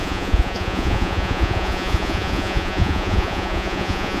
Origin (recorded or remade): remade